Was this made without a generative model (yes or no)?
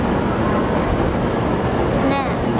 yes